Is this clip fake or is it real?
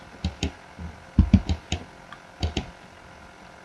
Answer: real